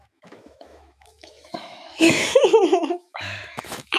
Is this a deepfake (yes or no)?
yes